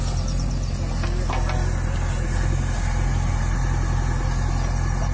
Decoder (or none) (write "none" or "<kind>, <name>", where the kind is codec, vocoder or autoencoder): none